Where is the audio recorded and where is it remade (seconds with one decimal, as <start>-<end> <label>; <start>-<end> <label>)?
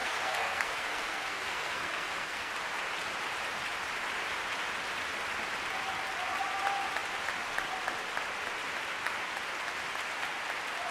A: 0.0-2.5 remade; 2.5-10.9 recorded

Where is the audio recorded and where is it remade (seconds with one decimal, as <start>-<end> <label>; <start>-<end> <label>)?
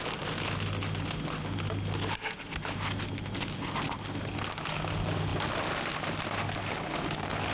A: 0.0-7.5 recorded